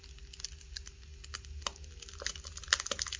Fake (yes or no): no